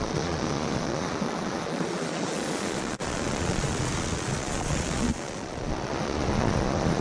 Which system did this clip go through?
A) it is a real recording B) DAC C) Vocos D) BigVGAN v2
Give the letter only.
C